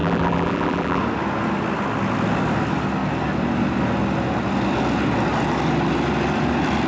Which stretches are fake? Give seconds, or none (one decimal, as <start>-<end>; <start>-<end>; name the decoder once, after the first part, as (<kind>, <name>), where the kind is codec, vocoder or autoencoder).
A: 0.0-1.0 (vocoder, BigVGAN v2)